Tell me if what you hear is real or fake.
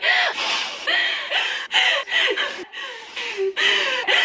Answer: fake